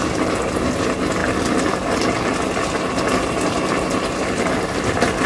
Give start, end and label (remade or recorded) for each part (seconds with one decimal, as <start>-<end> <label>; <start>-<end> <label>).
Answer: 0.0-5.3 recorded